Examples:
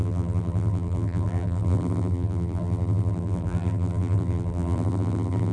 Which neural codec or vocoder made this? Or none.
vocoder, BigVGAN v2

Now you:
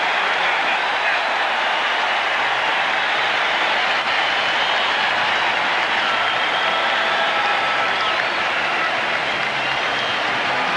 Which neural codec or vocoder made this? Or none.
vocoder, BigVGAN v2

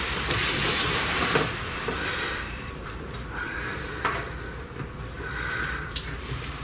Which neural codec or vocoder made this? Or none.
vocoder, BigVGAN v2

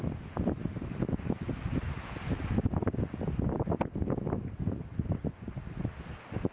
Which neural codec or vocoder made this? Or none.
none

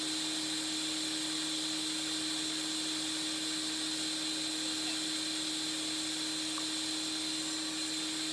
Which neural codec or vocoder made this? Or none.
none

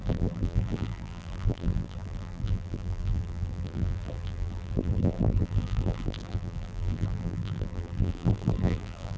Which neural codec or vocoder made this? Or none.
vocoder, BigVGAN v2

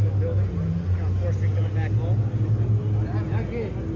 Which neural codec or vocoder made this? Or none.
none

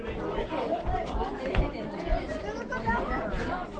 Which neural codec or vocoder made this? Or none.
vocoder, BigVGAN v2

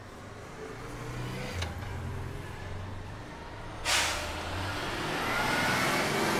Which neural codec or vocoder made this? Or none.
none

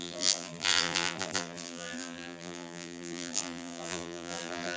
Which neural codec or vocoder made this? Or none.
vocoder, BigVGAN v2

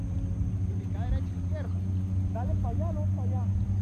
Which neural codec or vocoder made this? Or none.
none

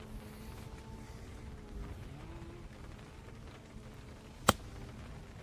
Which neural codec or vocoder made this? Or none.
none